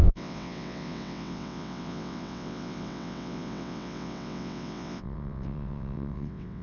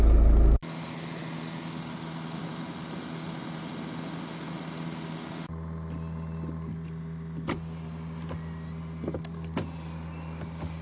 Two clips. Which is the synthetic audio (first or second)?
first